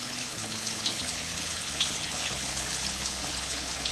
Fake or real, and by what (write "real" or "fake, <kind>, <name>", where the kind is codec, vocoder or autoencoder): fake, codec, HILCodec